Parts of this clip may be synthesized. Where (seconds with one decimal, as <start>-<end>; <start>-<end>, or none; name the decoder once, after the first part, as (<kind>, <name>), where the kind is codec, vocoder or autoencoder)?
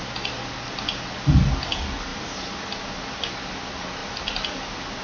none